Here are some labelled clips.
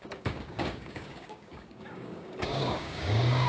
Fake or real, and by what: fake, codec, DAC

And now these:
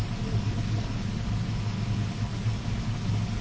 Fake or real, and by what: real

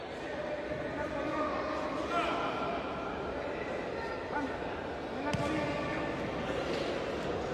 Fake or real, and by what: real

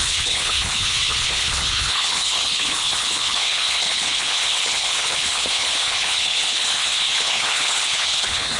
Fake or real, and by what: fake, codec, HILCodec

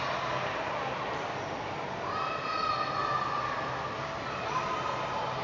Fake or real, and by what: real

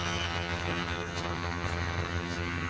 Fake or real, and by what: fake, vocoder, HiFi-GAN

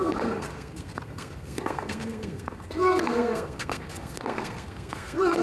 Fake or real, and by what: fake, codec, SNAC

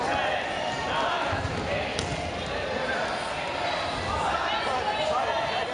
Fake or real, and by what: real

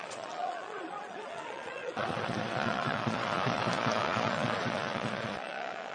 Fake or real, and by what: fake, vocoder, Vocos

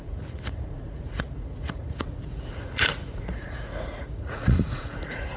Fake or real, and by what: fake, vocoder, Vocos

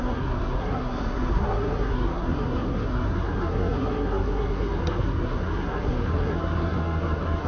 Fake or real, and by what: fake, codec, SNAC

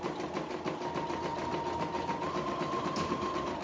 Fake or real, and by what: real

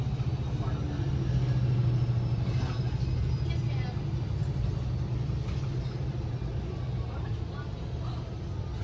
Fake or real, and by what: real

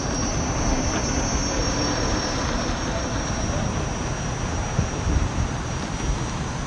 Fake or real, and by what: real